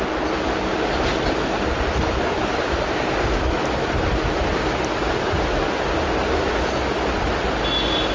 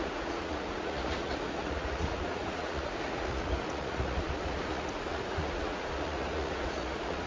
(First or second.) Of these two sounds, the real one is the first